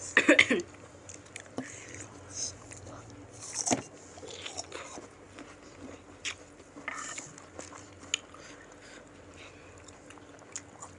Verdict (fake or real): real